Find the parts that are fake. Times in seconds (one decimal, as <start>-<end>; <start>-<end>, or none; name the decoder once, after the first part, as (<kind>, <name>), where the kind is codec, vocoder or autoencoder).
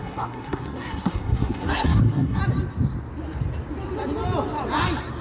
0.0-2.4 (codec, SNAC)